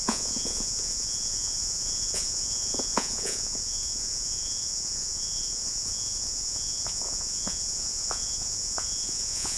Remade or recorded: remade